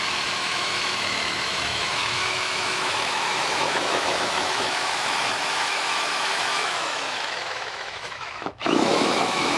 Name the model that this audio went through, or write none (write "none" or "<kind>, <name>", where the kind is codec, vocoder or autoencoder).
autoencoder, DAC-VAE